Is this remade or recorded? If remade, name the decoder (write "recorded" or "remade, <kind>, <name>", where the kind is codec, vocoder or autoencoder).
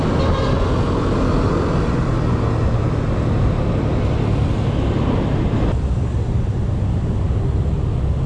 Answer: recorded